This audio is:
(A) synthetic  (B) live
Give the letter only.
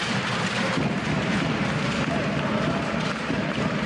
A